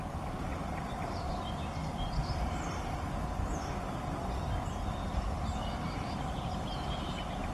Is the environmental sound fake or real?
real